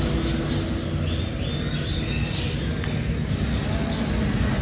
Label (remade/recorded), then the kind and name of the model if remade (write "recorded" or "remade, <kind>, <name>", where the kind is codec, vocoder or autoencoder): recorded